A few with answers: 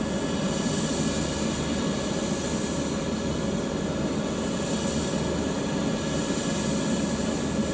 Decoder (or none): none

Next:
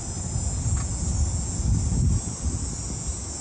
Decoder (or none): none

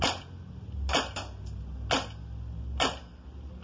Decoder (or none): none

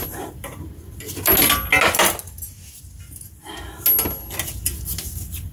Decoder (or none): none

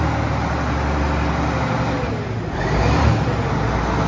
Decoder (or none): none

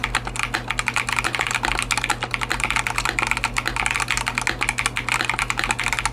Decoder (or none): none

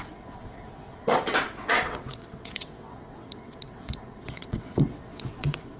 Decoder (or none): vocoder, WaveNeXt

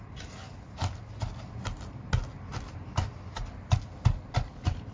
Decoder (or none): none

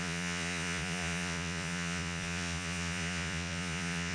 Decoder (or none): vocoder, Vocos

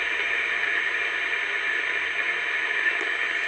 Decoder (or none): none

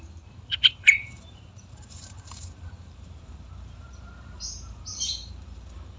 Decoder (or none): vocoder, BigVGAN v2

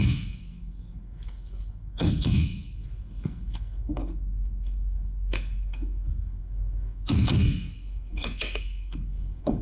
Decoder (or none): codec, SNAC